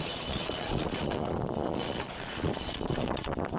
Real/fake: fake